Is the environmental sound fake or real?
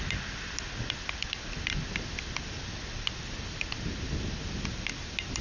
real